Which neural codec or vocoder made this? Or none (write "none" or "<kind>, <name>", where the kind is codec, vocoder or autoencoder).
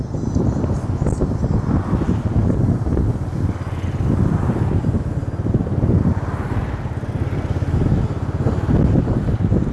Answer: none